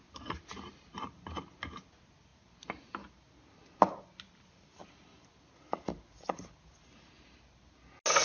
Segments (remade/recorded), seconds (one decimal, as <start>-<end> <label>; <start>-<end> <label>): 0.0-8.2 recorded